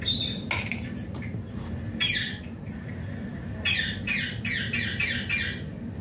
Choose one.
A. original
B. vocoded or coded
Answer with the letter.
A